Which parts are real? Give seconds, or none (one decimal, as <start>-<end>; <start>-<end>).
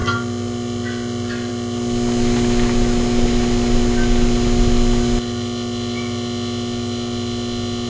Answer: 0.0-7.9